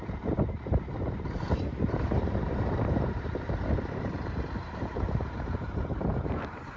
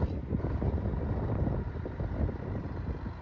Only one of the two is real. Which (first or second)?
second